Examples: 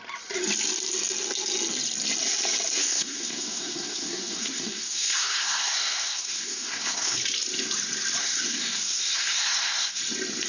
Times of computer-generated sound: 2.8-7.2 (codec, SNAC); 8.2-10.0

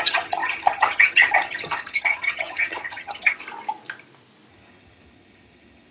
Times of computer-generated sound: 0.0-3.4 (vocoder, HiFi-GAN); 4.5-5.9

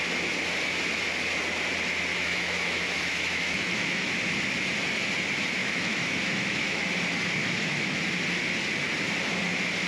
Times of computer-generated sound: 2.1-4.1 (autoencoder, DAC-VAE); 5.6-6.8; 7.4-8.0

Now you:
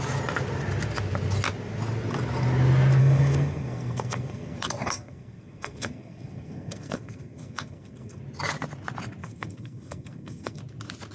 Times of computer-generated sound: 3.0-8.2 (codec, SNAC); 9.2-10.6

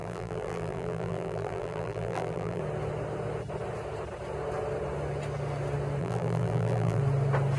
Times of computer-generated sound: 0.0-2.6 (vocoder, BigVGAN v2); 6.0-7.0